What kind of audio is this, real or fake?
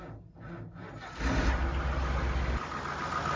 real